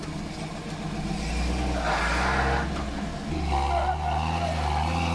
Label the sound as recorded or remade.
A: recorded